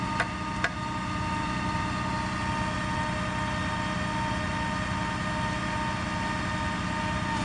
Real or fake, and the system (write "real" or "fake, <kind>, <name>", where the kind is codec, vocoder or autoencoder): real